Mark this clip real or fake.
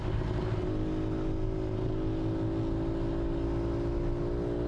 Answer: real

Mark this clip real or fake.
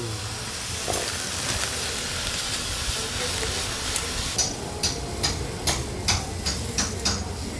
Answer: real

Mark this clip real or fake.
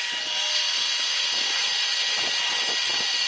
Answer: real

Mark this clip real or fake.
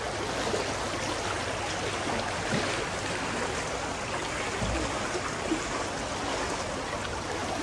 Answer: real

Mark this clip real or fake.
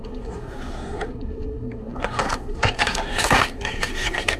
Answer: fake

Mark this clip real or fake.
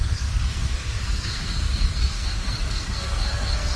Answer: fake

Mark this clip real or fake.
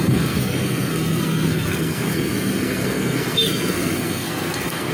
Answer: fake